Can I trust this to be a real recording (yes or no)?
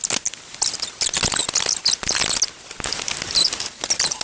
yes